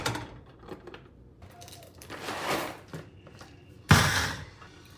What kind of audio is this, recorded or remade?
remade